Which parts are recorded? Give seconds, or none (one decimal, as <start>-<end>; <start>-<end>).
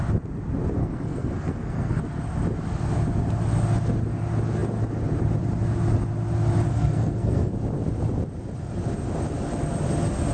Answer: 0.0-0.8; 2.0-6.7; 7.5-10.3